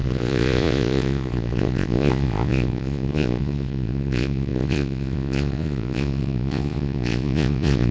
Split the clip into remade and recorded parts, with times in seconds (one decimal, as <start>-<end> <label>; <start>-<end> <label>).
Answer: 0.0-7.9 remade